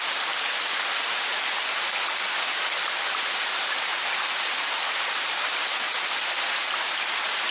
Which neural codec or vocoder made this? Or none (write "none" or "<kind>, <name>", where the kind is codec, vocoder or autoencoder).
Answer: none